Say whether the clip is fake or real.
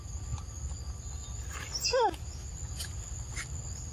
real